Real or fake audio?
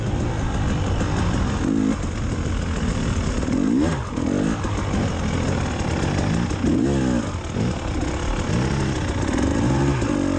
real